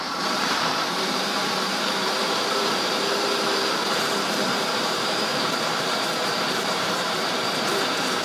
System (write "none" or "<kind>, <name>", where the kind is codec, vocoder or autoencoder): vocoder, BigVGAN v2